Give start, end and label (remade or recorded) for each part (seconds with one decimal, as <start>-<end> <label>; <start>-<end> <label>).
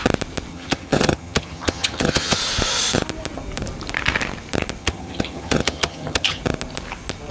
0.0-0.5 recorded; 0.5-2.4 remade; 2.4-4.8 recorded; 4.8-6.4 remade; 6.4-7.3 recorded